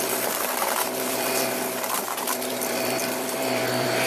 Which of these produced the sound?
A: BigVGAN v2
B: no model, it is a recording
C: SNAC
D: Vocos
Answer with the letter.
A